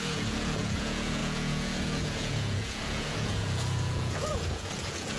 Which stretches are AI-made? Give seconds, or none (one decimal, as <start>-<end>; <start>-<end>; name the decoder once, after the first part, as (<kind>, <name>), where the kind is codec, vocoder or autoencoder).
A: 0.0-5.2 (vocoder, Vocos)